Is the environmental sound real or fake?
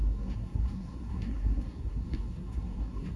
fake